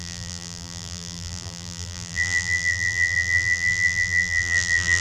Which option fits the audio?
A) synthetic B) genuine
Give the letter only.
A